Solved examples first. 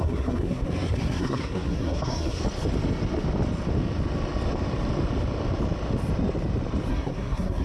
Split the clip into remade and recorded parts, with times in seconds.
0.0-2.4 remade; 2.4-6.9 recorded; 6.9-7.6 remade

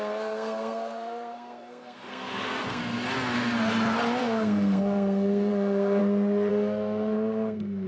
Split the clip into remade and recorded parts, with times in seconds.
0.0-2.8 remade; 2.8-4.2 recorded; 4.2-6.0 remade; 6.0-6.5 recorded; 6.5-7.9 remade

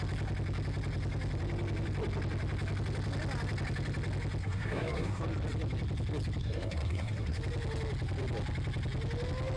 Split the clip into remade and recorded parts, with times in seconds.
0.0-4.4 recorded; 4.4-5.2 remade; 5.2-6.4 recorded; 6.4-7.4 remade; 7.4-9.6 recorded

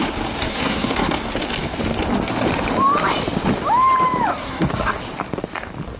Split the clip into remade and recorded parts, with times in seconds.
0.0-0.5 recorded; 0.5-1.1 remade; 1.1-4.3 recorded; 4.3-5.0 remade; 5.0-6.0 recorded

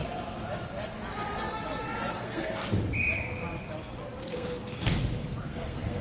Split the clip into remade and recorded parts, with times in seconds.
0.0-2.1 recorded; 2.1-2.6 remade; 2.6-4.2 recorded; 4.2-4.9 remade; 4.9-5.4 recorded; 5.4-6.0 remade